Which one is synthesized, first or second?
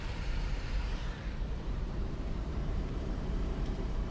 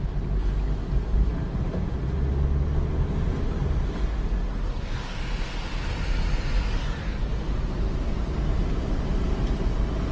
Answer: first